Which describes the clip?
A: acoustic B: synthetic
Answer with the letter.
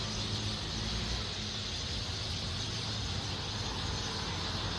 A